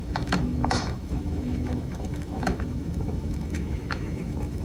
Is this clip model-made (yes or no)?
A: yes